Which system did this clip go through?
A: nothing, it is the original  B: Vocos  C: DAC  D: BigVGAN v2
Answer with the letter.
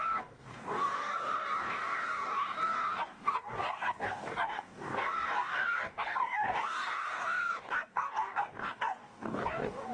C